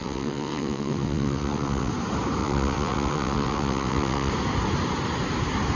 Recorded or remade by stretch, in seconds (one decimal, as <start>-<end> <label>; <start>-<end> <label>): 0.0-1.9 remade; 1.9-2.4 recorded; 2.4-4.3 remade; 4.3-5.8 recorded